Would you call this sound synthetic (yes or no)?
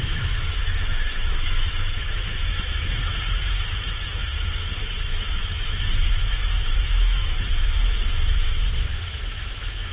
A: yes